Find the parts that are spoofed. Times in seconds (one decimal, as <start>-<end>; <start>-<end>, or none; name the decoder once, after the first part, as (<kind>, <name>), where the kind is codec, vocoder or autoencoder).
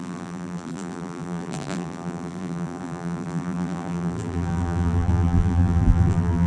0.0-6.5 (vocoder, BigVGAN v2)